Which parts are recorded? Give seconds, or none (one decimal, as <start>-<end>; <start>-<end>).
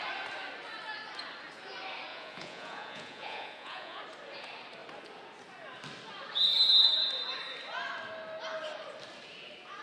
0.0-2.1; 4.0-9.8